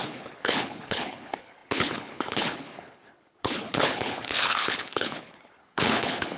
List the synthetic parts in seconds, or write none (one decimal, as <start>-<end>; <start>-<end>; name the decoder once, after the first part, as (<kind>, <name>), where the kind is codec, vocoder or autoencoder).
0.0-6.4 (codec, HILCodec)